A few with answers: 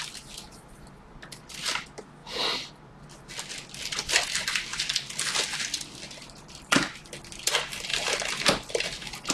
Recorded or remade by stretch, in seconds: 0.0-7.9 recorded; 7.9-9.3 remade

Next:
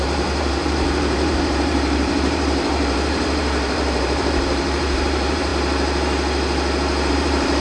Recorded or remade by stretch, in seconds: 0.0-5.5 remade; 5.5-7.1 recorded; 7.1-7.6 remade

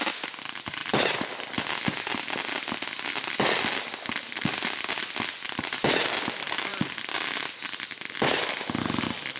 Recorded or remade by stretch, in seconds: 0.0-9.4 recorded

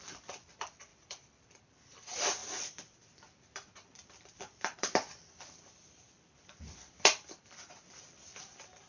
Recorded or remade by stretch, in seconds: 0.0-8.9 remade